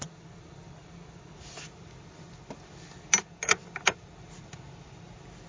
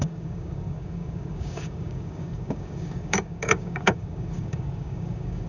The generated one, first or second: second